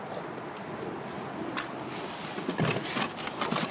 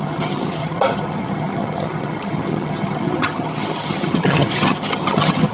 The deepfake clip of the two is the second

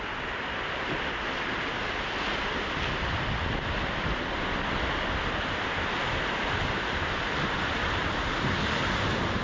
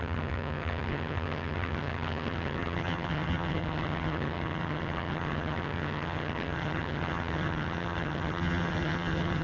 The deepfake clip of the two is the second